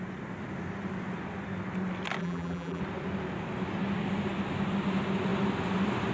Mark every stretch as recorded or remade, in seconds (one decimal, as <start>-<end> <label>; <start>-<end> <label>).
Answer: 0.0-2.2 recorded; 2.2-2.8 remade; 2.8-6.1 recorded